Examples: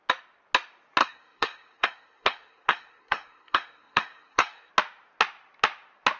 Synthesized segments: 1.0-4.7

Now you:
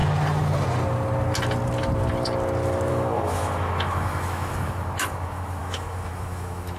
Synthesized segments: 2.9-6.8

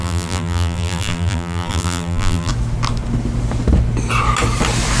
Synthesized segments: 0.0-2.5

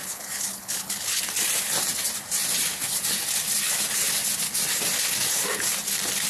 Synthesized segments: 0.0-1.2